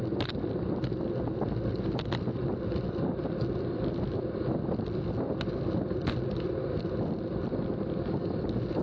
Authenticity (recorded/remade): recorded